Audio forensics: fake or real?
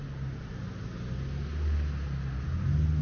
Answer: real